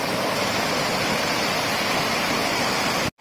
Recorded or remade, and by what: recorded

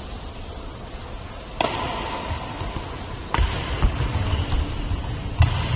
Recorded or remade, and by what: recorded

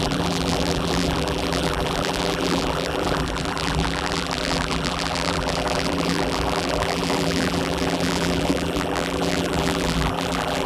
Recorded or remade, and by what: remade, vocoder, BigVGAN v2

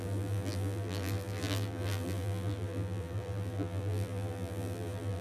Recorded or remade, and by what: remade, vocoder, BigVGAN v2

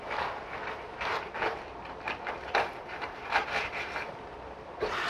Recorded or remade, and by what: remade, vocoder, BigVGAN v2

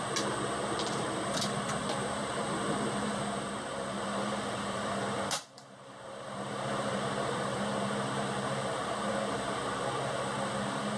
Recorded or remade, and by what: remade, vocoder, BigVGAN v2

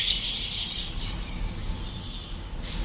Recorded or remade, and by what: recorded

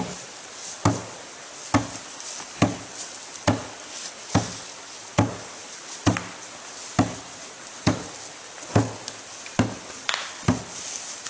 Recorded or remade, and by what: recorded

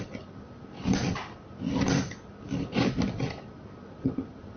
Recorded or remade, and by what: recorded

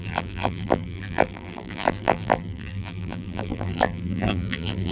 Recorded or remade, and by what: remade, vocoder, BigVGAN v2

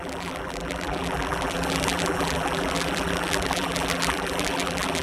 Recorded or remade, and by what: remade, vocoder, BigVGAN v2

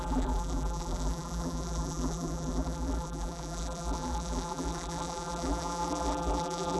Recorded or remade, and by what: remade, vocoder, BigVGAN v2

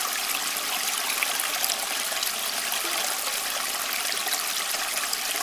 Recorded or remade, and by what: recorded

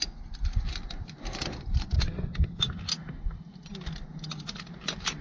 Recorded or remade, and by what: recorded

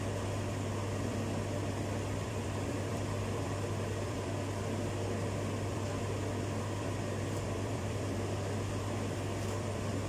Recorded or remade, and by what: remade, vocoder, BigVGAN v2